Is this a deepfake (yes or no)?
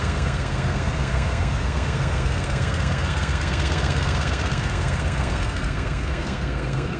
yes